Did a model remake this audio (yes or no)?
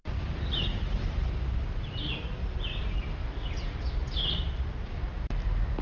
no